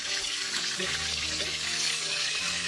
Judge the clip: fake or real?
fake